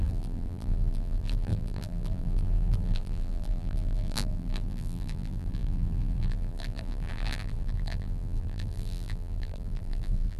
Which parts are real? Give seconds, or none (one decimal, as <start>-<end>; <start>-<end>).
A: none